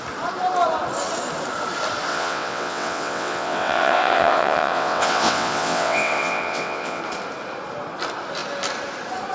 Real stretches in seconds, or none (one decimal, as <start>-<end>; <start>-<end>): 0.0-2.1; 7.0-9.3